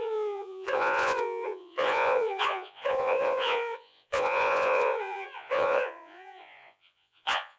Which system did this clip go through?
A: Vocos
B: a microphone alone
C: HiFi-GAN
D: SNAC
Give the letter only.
A